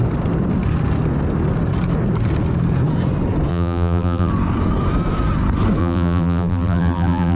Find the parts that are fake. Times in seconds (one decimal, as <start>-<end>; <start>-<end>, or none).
3.5-4.3; 5.8-7.4